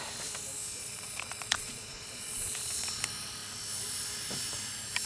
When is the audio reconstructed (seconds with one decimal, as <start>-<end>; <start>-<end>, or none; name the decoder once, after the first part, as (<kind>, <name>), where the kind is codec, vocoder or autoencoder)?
0.8-3.0 (vocoder, Vocos)